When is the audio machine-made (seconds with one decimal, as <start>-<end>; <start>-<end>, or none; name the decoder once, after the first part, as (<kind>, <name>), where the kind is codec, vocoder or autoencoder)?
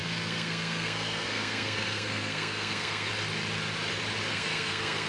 0.0-3.1 (codec, SNAC); 4.3-5.1